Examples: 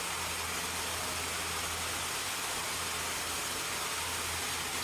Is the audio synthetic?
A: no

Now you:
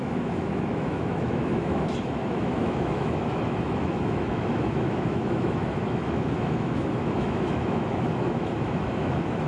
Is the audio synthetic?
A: yes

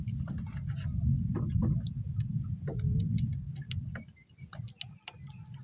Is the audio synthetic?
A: no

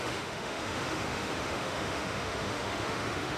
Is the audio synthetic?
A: yes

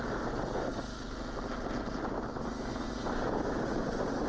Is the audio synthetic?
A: no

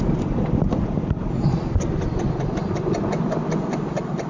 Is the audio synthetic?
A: no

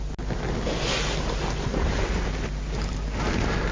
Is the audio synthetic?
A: no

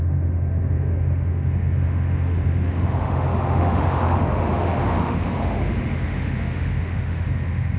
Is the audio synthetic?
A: yes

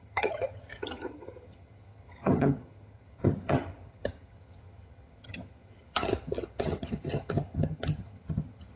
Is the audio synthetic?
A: yes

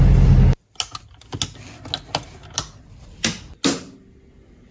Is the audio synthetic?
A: no